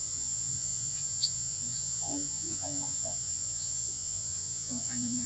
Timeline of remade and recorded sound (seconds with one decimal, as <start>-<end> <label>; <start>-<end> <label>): 0.0-5.3 remade